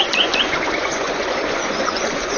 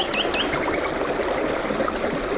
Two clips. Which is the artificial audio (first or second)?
first